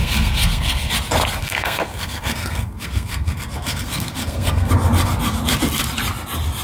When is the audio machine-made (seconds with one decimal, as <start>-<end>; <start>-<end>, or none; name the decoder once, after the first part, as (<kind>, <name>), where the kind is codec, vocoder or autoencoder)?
0.0-0.9 (codec, SNAC); 1.4-4.7